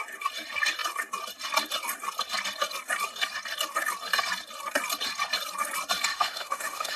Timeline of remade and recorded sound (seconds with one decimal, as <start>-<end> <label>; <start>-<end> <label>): 0.0-6.1 recorded; 6.1-7.0 remade